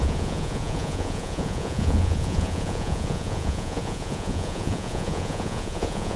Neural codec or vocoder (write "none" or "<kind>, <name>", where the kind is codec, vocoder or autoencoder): vocoder, Vocos